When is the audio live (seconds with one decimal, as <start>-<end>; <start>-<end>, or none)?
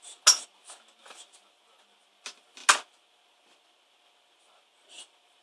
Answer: 0.0-5.4